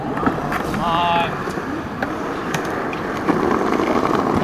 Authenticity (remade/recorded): remade